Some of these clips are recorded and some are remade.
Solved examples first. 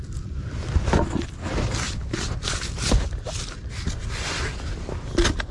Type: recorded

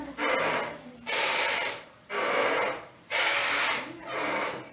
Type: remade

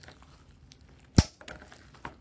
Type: recorded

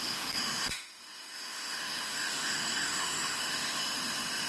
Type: remade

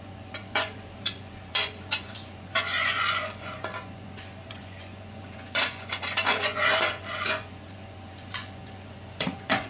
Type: remade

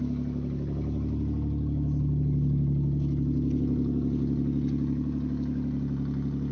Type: recorded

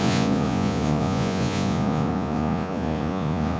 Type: remade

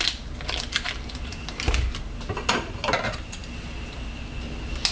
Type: recorded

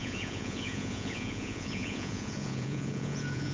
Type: remade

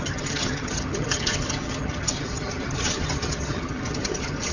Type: remade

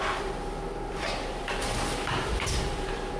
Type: remade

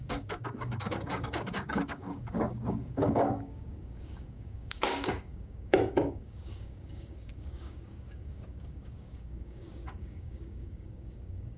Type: remade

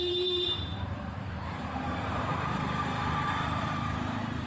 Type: remade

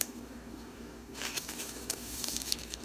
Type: remade